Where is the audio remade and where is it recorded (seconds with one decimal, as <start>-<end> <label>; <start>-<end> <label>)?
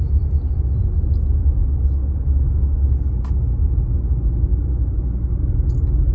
0.0-4.5 recorded; 4.5-5.1 remade; 5.1-6.1 recorded